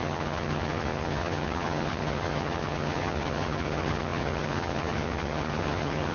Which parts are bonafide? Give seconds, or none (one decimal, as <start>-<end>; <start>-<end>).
none

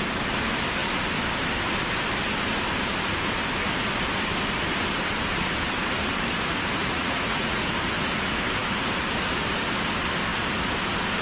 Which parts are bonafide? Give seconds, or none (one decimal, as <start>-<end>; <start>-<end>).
0.0-6.8; 7.6-11.2

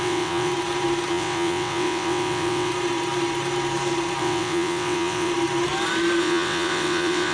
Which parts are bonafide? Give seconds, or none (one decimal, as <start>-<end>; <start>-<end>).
0.5-1.1; 2.7-4.2; 5.3-6.2

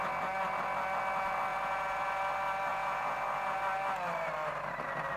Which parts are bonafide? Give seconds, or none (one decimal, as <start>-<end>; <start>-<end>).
0.0-1.5; 2.2-2.7; 3.6-5.2

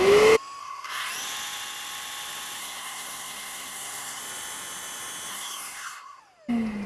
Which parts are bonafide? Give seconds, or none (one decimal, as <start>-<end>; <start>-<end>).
0.0-0.6; 1.1-2.6; 4.2-5.3; 6.2-6.9